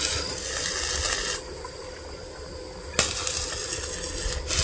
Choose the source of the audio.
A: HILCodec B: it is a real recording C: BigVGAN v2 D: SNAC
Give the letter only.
B